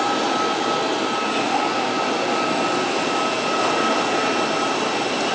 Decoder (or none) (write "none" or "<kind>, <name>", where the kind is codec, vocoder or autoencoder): none